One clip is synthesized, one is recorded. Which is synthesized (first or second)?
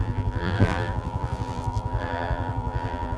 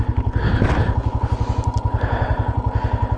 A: first